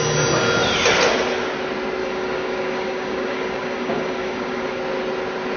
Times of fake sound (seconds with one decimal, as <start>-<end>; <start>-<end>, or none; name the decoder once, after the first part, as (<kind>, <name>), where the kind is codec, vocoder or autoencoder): 2.0-4.8 (codec, DAC)